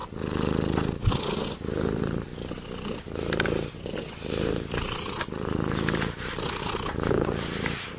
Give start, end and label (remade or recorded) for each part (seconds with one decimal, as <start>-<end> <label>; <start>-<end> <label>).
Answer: 0.0-1.5 recorded; 1.5-2.3 remade; 2.3-4.7 recorded; 4.7-8.0 remade